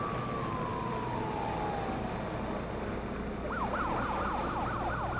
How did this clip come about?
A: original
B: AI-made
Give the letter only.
A